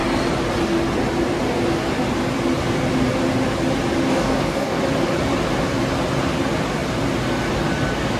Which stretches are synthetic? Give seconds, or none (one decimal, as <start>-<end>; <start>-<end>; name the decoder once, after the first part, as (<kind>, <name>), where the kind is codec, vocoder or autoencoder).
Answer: 4.1-4.8 (codec, DAC)